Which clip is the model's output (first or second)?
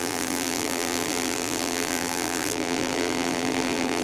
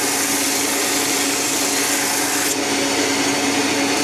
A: first